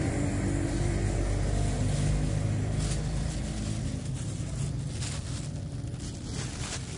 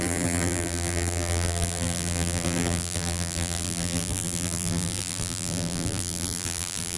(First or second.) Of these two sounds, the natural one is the first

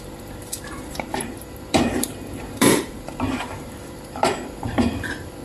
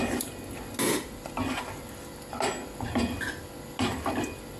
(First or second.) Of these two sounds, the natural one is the second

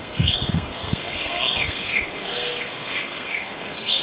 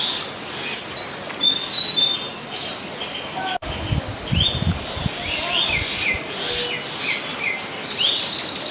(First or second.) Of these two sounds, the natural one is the second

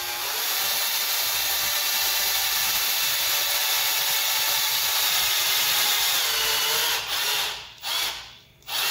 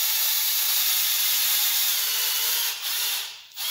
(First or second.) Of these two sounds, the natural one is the first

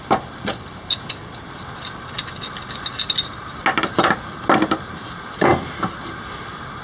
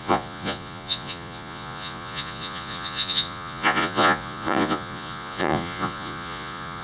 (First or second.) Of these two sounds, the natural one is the first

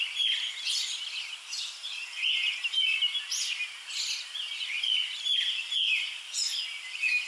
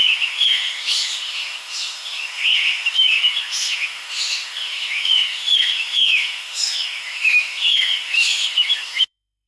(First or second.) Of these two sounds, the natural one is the first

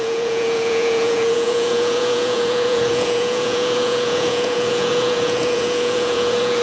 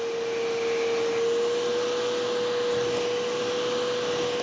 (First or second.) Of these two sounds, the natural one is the second